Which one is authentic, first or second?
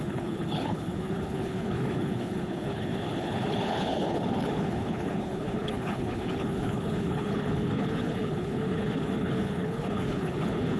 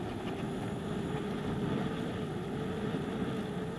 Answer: second